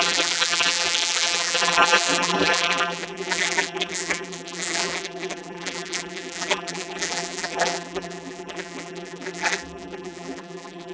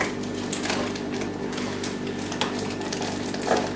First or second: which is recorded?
second